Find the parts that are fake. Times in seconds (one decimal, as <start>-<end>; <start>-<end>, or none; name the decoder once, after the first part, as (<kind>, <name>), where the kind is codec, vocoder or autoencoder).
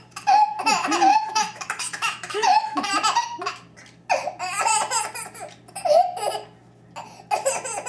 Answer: 1.1-2.9 (autoencoder, DAC-VAE)